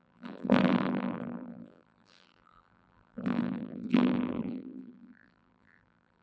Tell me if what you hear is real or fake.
fake